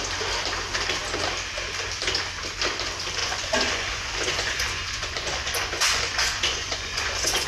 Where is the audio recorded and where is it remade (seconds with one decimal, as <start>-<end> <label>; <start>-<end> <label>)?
0.0-3.2 recorded; 3.2-7.5 remade